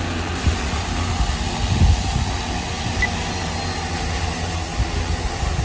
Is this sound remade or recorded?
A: recorded